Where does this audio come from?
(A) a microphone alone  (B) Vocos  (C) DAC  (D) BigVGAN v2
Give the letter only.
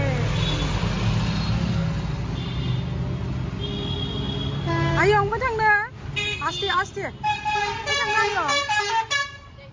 A